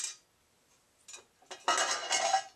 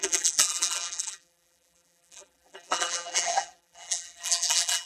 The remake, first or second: second